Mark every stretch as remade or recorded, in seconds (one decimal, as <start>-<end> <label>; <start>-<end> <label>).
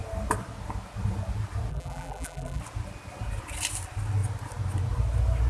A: 0.0-1.7 recorded; 1.7-2.6 remade; 2.6-5.5 recorded